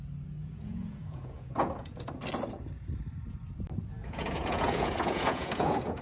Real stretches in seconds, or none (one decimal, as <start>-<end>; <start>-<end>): 0.0-0.4; 2.1-4.0